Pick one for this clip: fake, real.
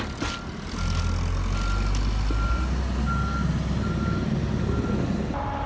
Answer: real